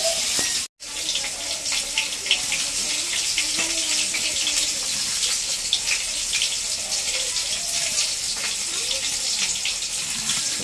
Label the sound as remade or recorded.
recorded